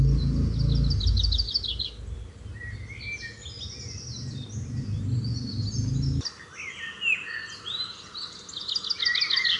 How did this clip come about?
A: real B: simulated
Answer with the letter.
A